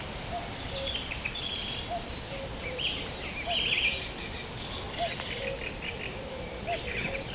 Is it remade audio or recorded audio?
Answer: recorded